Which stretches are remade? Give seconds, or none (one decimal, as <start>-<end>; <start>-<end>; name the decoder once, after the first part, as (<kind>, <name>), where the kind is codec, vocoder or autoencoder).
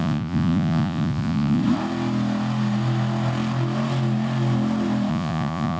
0.0-1.6 (vocoder, Vocos); 5.1-5.8